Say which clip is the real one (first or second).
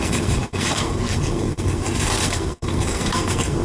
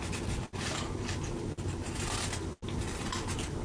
second